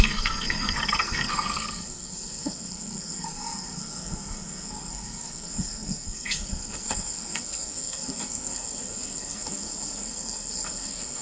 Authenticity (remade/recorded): remade